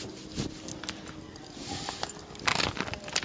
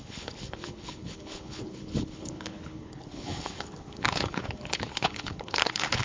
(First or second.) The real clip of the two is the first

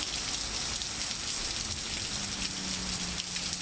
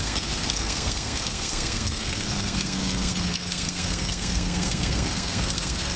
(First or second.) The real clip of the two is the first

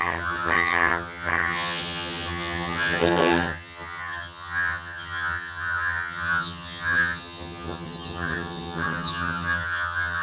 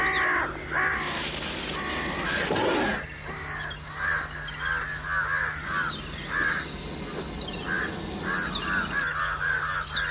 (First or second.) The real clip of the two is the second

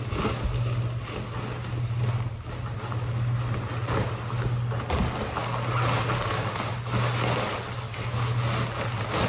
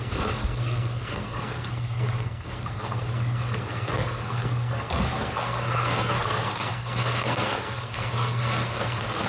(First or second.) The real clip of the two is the first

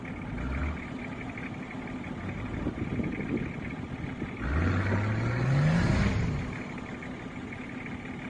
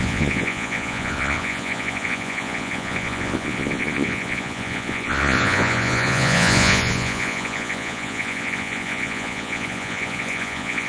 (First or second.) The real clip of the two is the first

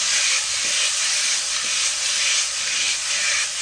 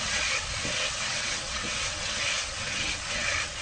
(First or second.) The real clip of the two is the first